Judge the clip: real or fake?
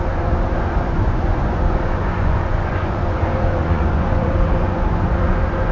fake